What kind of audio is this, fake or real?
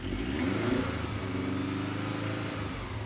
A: real